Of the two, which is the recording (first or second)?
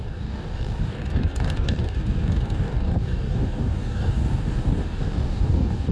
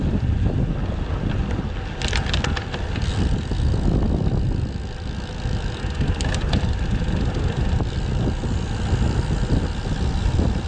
second